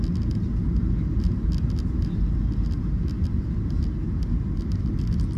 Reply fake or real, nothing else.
real